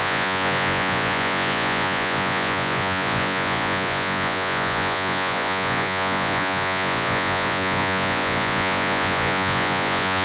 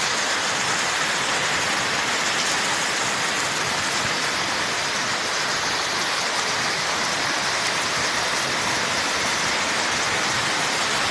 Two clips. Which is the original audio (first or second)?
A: second